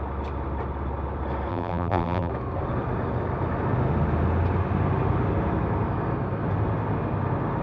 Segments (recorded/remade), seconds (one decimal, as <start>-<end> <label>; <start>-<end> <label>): 0.0-1.5 recorded; 1.5-2.3 remade; 2.3-7.6 recorded